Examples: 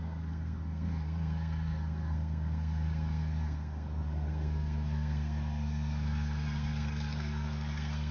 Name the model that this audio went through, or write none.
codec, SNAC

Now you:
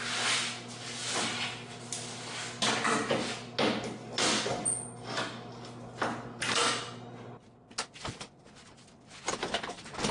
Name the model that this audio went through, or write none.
none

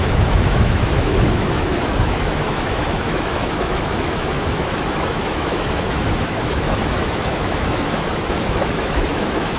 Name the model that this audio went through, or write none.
autoencoder, DAC-VAE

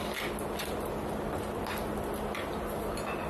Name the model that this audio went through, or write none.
none